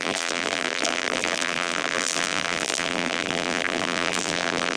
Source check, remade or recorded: remade